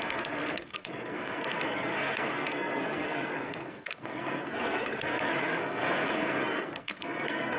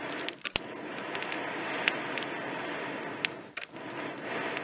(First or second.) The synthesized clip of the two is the first